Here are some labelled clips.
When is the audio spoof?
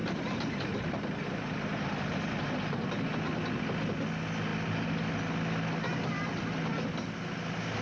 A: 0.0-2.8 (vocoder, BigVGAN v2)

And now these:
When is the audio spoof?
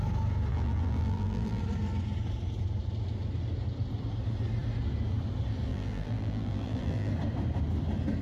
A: 0.5-1.6 (vocoder, BigVGAN v2); 5.7-7.1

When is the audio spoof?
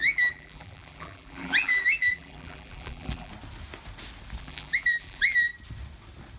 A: 0.0-3.3 (vocoder, BigVGAN v2); 4.4-5.5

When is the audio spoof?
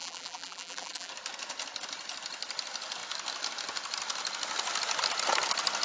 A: 0.0-1.1 (vocoder, BigVGAN v2)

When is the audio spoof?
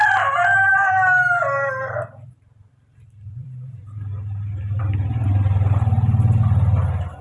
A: 0.5-4.8 (vocoder, BigVGAN v2)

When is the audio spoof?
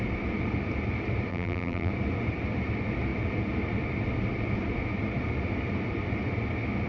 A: 1.3-1.9 (vocoder, BigVGAN v2)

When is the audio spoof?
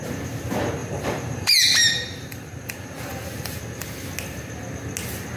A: 0.8-3.6 (vocoder, BigVGAN v2)